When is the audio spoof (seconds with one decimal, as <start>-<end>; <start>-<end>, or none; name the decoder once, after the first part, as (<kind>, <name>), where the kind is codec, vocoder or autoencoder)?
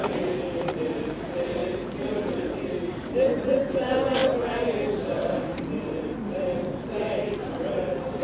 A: 0.0-1.6 (vocoder, BigVGAN v2); 2.3-4.2; 5.4-8.2